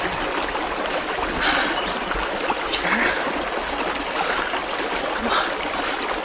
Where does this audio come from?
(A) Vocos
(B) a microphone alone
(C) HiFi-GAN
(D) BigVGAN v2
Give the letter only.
B